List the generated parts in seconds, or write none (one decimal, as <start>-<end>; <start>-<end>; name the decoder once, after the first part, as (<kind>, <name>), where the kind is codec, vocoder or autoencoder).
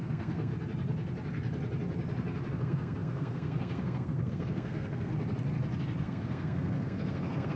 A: 0.0-0.5 (codec, SNAC); 2.5-5.1; 6.0-7.6